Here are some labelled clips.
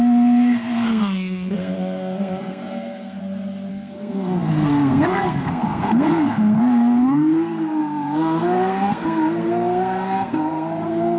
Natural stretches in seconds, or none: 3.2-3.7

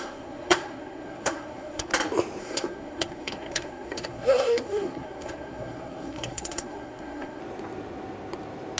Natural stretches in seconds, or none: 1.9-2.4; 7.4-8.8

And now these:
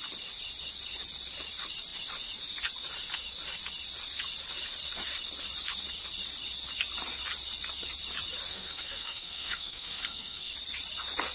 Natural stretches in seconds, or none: 0.0-8.5; 10.5-11.3